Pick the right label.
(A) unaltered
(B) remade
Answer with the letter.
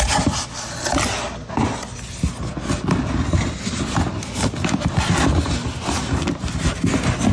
A